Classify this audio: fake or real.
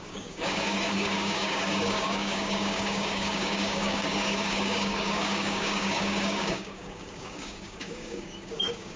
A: fake